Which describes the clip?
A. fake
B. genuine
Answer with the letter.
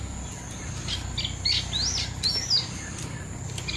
B